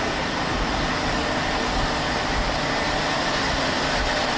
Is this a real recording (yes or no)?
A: yes